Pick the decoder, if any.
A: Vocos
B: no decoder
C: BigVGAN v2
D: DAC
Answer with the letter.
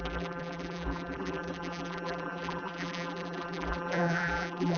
C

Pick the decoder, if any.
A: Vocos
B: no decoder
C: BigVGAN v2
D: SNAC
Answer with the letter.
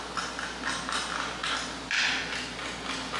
B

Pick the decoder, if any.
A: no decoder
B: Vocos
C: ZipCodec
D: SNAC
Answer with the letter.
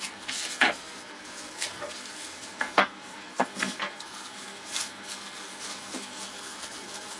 D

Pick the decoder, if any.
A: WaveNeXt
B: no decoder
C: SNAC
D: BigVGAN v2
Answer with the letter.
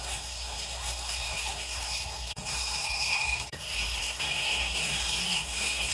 C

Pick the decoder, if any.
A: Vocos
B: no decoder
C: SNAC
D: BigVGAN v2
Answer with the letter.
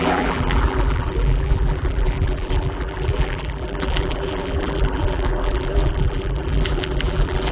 D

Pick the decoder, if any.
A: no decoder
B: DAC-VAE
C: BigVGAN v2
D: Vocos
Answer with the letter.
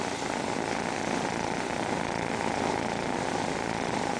A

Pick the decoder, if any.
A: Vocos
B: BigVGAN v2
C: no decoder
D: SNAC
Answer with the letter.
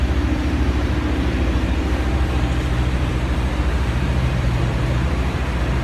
B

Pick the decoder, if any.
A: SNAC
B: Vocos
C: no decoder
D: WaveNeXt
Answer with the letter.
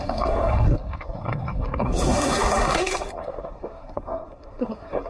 A